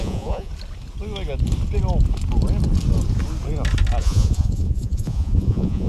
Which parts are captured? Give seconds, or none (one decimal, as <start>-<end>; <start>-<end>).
0.5-4.0